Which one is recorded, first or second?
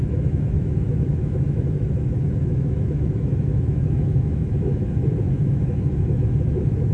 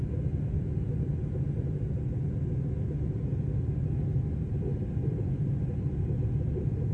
second